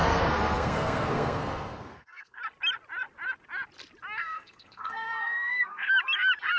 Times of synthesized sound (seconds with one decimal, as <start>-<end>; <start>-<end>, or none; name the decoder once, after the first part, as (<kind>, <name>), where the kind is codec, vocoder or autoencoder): 0.0-2.4 (codec, SNAC); 4.2-5.9